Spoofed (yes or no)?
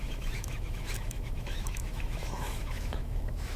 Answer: yes